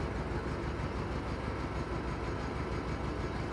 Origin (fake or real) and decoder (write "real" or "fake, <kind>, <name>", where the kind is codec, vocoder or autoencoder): real